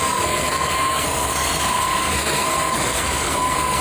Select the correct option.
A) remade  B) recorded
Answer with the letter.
A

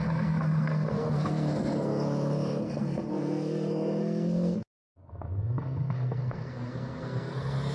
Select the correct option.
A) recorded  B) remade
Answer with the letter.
B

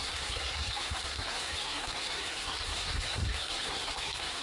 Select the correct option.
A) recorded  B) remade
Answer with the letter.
B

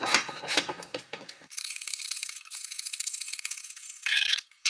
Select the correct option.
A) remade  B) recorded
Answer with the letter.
A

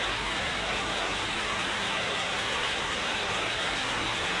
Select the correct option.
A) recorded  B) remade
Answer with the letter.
B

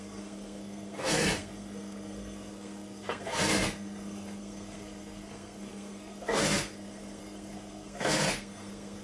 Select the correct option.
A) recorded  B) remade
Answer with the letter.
B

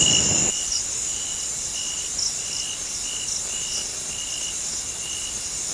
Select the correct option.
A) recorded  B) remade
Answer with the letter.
A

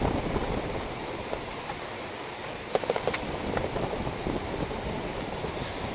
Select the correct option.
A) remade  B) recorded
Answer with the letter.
B